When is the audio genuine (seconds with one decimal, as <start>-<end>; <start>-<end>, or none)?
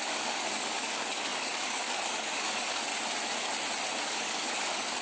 2.9-4.0